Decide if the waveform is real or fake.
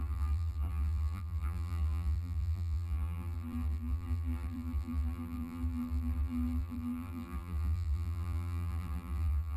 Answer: fake